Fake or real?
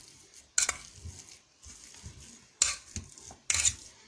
real